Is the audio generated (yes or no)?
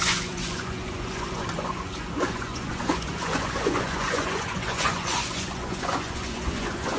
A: yes